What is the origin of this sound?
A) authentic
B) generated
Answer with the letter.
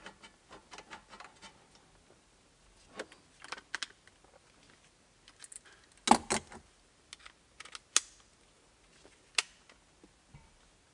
A